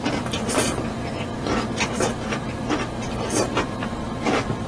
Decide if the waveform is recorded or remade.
remade